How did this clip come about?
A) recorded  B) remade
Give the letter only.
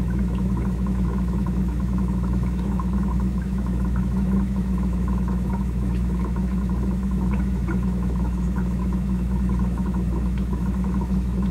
B